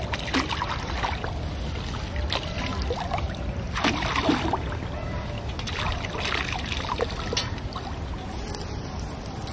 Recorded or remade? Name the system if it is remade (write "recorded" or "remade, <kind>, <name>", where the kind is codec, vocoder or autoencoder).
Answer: recorded